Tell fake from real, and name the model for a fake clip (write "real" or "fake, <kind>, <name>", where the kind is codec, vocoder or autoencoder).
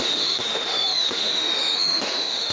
fake, autoencoder, DAC-VAE